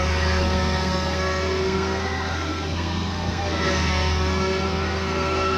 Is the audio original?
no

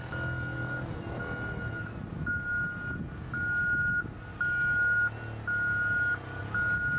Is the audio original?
yes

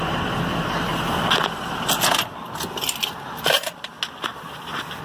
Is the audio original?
yes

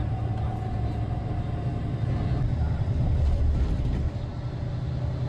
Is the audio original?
yes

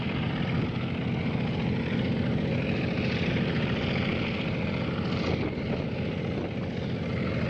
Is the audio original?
yes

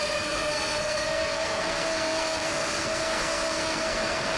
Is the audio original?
no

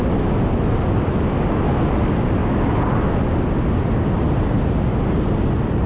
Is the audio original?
yes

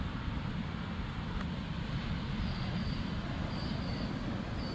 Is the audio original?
yes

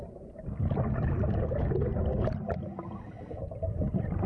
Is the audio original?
yes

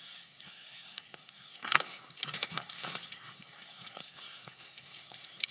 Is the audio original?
no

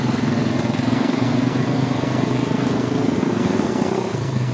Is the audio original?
no